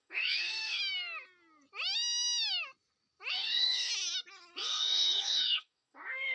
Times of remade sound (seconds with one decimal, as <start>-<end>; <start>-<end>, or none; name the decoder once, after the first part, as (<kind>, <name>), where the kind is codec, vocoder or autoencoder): 0.0-0.8 (codec, DAC); 3.3-3.9; 4.6-6.3